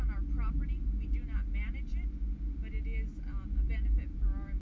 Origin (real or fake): real